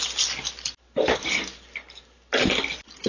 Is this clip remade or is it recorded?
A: recorded